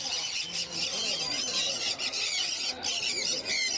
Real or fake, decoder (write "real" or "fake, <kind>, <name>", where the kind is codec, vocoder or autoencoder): real